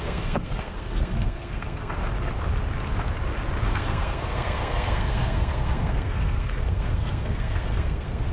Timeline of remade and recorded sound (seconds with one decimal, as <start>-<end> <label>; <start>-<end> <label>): 0.0-2.0 remade; 2.0-3.6 recorded; 3.6-8.3 remade